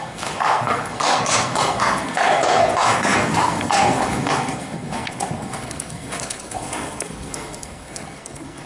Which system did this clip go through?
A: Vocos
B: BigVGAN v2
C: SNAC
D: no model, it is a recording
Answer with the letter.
C